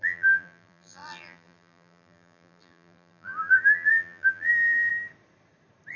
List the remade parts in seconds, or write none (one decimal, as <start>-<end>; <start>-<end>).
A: 0.0-4.9